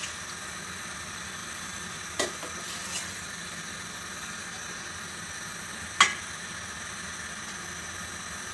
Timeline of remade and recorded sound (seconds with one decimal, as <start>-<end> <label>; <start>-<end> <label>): 0.0-1.4 recorded; 1.4-4.6 remade; 4.6-8.5 recorded